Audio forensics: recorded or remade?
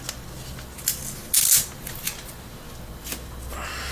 recorded